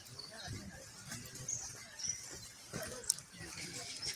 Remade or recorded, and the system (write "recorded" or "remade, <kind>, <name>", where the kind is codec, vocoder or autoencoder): recorded